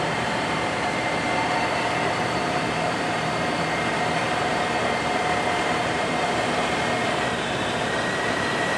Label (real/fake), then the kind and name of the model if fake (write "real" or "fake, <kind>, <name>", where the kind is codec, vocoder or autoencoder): fake, vocoder, BigVGAN v2